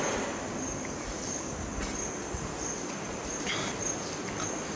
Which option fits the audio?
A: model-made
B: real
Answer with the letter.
B